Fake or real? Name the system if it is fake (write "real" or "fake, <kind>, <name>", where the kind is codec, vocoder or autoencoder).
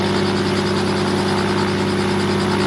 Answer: real